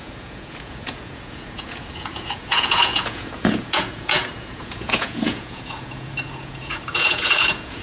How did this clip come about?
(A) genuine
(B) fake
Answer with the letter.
B